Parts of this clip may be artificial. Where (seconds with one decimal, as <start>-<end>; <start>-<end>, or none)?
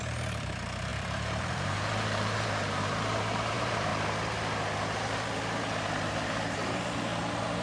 0.0-3.9; 6.2-7.1